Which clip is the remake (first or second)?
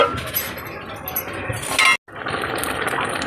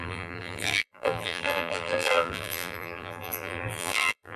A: second